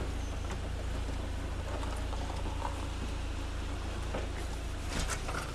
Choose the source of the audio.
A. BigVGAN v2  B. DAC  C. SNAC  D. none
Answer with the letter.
D